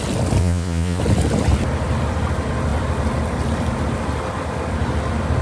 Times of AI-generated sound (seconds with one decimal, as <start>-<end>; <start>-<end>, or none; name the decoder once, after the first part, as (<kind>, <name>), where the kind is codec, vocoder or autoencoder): 0.4-1.0 (vocoder, Vocos)